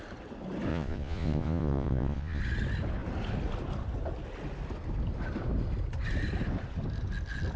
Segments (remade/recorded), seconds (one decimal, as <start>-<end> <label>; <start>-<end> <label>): 0.0-0.7 recorded; 0.7-2.4 remade; 2.4-7.6 recorded